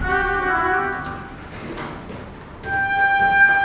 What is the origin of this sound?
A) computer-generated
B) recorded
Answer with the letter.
B